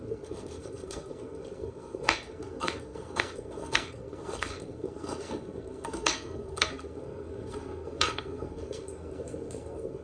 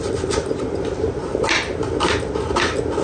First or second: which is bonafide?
second